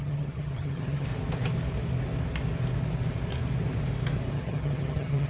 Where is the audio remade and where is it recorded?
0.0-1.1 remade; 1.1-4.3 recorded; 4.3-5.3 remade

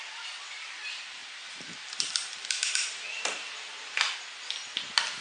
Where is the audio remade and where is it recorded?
0.0-2.4 remade; 2.4-5.2 recorded